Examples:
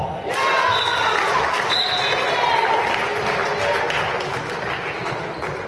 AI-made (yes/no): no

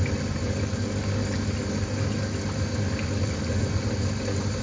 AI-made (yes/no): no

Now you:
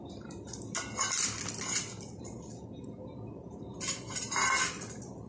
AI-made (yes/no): no